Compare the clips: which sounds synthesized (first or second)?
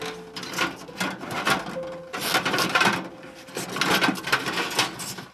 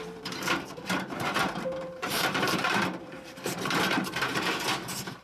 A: second